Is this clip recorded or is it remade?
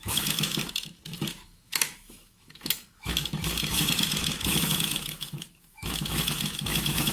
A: remade